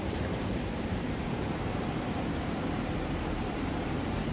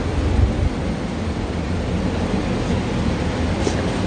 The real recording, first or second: second